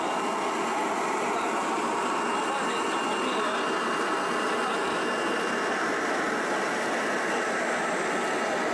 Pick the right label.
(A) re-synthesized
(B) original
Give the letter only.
B